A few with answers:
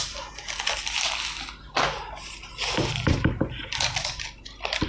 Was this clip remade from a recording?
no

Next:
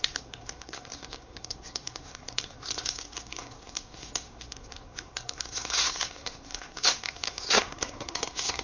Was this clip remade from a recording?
yes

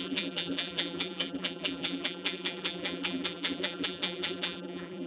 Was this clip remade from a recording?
yes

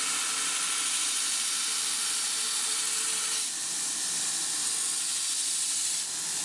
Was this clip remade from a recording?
no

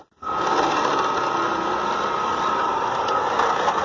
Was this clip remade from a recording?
no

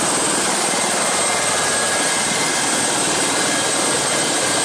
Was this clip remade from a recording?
no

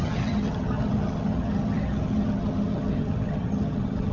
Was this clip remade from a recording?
yes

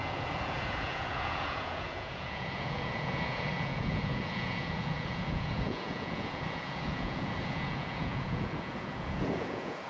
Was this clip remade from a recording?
yes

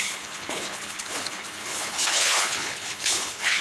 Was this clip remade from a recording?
yes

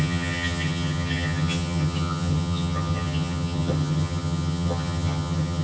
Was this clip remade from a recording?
yes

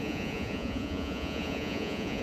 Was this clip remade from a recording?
yes